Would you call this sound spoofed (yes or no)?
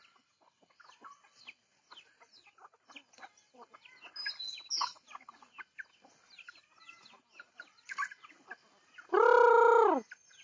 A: no